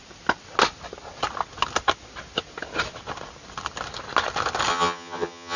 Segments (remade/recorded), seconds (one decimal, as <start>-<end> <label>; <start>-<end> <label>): 0.0-4.7 recorded; 4.7-5.6 remade